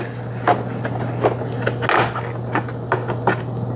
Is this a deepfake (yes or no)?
no